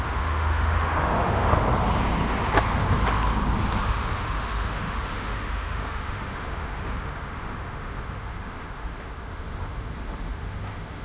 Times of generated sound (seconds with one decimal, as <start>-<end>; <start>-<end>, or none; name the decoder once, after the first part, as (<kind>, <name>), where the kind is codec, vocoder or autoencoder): 0.0-1.5 (autoencoder, DAC-VAE); 3.8-11.0